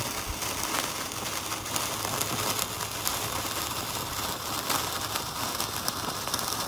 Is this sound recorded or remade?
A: recorded